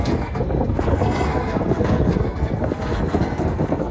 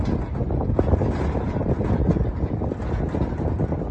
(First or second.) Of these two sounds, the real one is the second